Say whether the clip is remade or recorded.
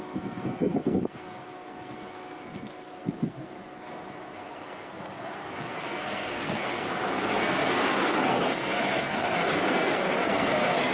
remade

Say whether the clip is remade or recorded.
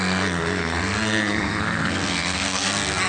remade